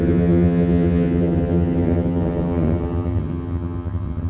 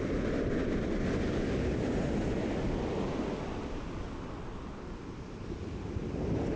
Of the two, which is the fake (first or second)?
first